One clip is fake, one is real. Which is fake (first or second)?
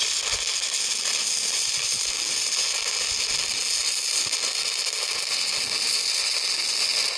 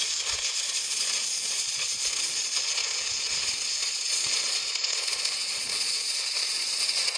second